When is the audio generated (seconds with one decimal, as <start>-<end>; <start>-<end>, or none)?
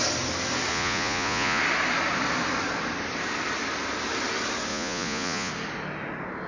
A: 0.7-1.6; 4.7-5.5